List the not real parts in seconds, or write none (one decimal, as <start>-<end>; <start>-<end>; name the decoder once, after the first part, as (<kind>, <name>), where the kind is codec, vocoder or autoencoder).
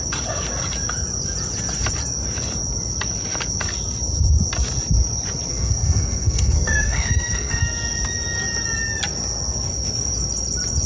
5.5-7.6 (codec, SNAC)